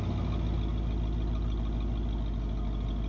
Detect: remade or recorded recorded